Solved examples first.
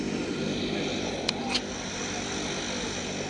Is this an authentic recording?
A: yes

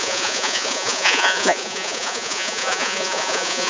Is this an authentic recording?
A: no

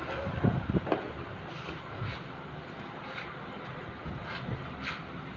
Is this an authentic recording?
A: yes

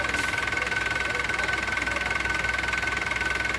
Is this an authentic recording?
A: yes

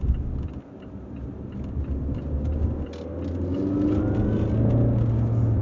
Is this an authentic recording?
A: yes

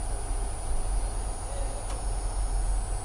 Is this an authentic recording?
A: yes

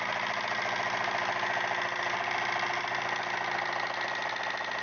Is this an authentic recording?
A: yes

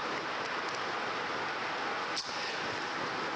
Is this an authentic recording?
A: yes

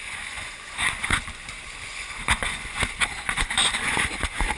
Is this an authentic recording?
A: no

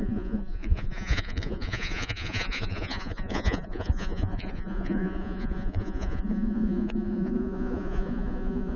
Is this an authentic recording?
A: no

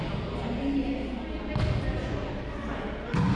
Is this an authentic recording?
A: yes